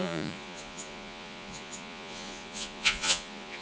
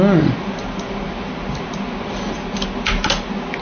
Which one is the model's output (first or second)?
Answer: first